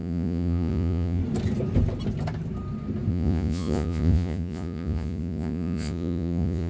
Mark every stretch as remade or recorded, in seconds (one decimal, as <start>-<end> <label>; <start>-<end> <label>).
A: 0.0-1.2 remade; 1.2-3.1 recorded; 3.1-6.7 remade